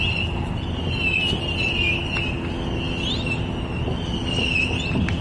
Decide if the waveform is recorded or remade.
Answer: recorded